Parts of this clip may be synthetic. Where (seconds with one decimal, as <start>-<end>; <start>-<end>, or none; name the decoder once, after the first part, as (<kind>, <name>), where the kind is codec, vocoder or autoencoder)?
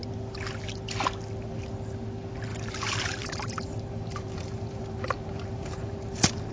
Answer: 2.5-6.5 (vocoder, BigVGAN v2)